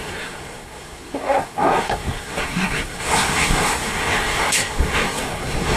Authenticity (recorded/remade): remade